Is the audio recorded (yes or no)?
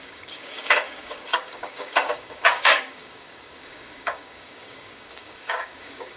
no